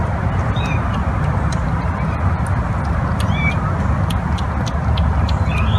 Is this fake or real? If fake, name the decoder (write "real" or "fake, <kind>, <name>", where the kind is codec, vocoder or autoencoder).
real